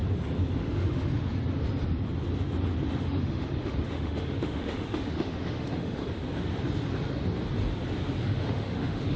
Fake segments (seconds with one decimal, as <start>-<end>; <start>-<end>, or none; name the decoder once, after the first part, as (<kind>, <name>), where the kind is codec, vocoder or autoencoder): 0.6-1.3 (autoencoder, DAC-VAE); 3.0-6.0; 8.2-9.2